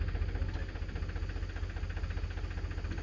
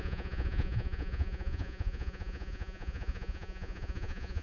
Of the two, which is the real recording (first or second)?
first